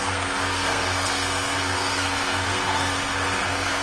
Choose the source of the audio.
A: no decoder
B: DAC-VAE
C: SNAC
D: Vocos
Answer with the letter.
C